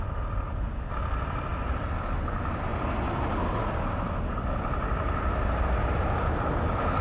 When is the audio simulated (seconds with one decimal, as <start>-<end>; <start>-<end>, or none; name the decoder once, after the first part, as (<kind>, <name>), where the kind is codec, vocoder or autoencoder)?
none